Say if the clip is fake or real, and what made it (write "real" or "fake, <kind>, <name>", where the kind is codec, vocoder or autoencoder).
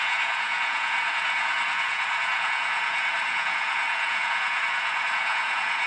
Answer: fake, vocoder, Vocos